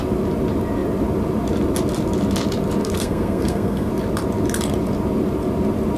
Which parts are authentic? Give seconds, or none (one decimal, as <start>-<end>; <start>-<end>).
0.0-2.8; 3.9-6.0